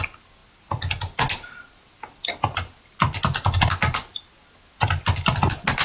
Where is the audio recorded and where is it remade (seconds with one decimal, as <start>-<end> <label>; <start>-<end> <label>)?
0.0-5.8 recorded